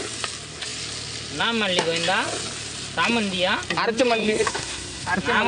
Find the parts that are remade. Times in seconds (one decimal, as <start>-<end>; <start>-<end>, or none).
4.2-5.1